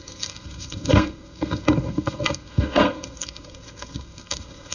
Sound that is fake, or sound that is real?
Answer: fake